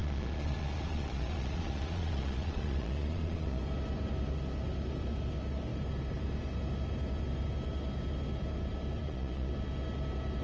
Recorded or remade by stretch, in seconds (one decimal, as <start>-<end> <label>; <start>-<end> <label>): 0.0-3.6 remade; 3.6-9.0 recorded; 9.0-9.5 remade; 9.5-10.4 recorded